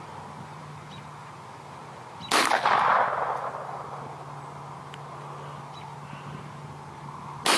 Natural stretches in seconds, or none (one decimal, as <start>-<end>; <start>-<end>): 0.0-7.6